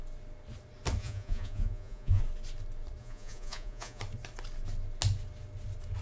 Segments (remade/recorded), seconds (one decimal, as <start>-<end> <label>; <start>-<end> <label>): 0.0-1.0 recorded; 1.0-2.2 remade; 2.2-3.0 recorded; 3.0-4.0 remade; 4.0-6.0 recorded